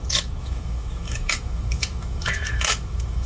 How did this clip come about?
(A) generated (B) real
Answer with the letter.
A